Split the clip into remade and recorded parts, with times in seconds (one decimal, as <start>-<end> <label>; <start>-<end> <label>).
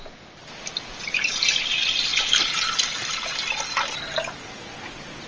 0.0-0.4 recorded; 0.4-1.0 remade; 1.0-2.1 recorded; 2.1-5.3 remade